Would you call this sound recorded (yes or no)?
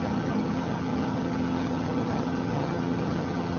no